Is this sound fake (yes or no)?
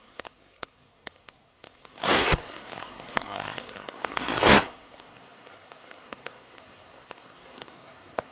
yes